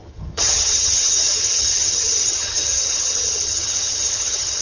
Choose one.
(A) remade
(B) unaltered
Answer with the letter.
A